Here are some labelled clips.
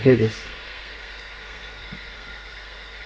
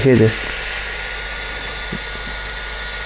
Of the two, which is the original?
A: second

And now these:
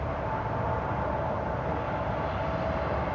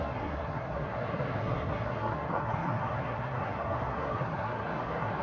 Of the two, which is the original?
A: first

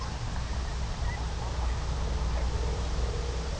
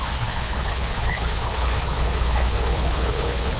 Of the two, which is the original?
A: first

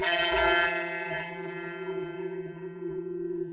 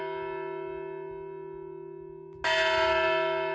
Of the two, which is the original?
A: second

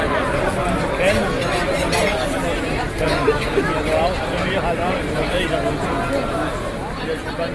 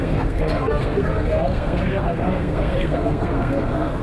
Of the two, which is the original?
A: first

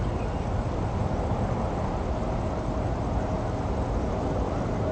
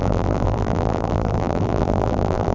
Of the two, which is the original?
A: first